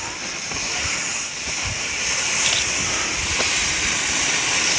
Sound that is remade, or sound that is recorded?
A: recorded